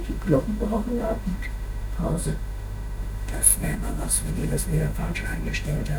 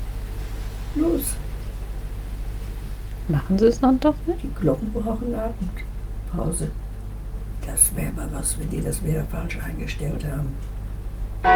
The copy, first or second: first